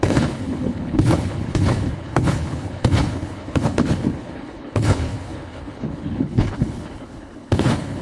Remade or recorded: remade